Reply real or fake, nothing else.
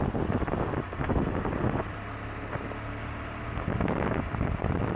real